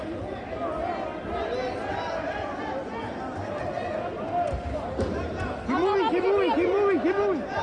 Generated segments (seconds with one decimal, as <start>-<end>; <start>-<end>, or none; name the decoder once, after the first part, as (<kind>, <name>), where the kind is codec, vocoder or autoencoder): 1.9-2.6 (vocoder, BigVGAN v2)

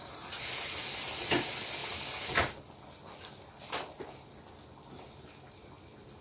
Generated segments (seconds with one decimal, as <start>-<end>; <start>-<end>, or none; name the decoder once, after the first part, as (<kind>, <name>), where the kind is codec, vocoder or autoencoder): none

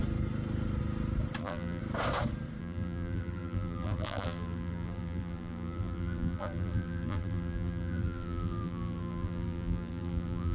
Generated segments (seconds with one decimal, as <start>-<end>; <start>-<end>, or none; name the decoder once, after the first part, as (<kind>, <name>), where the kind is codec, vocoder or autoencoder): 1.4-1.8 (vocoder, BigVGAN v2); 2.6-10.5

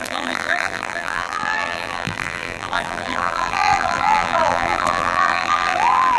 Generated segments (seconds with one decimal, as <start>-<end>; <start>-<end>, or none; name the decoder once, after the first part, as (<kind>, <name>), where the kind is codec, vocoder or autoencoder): 0.0-6.2 (vocoder, BigVGAN v2)

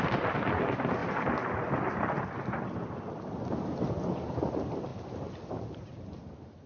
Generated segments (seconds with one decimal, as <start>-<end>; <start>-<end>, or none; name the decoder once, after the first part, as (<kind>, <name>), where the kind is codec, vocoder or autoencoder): 4.9-6.7 (vocoder, BigVGAN v2)